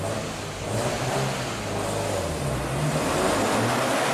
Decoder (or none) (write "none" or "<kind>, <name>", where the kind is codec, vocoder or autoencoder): none